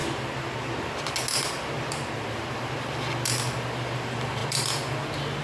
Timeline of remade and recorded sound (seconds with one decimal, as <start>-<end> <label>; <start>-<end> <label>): 0.0-2.3 recorded; 2.3-5.4 remade